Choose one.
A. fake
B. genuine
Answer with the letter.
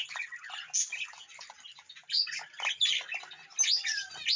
B